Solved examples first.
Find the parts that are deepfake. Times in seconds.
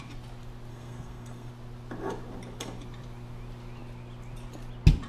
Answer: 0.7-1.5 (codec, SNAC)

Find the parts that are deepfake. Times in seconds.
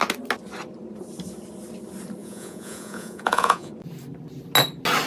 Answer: 2.2-3.7 (vocoder, Vocos)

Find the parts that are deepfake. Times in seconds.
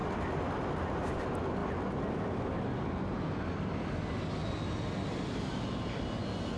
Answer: none